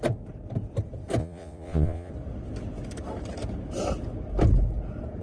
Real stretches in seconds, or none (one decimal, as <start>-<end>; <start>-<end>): 0.0-1.2; 2.1-5.2